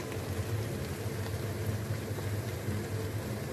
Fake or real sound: real